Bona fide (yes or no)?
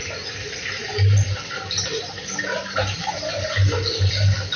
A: yes